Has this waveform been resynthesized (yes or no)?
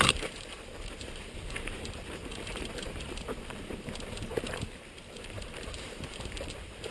yes